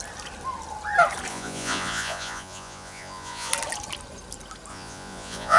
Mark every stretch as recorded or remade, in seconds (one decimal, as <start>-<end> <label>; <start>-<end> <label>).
0.0-1.3 recorded; 1.3-3.5 remade; 3.5-4.7 recorded; 4.7-5.6 remade